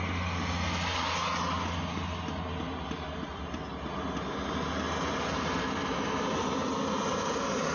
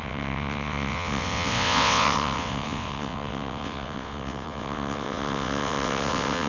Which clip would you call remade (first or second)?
second